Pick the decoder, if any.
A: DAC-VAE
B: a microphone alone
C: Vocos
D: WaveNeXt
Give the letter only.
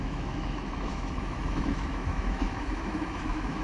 A